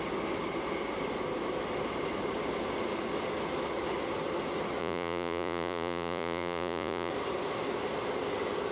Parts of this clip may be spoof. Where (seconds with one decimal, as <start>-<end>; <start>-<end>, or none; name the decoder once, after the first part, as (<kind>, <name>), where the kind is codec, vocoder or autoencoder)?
4.8-7.1 (vocoder, Vocos)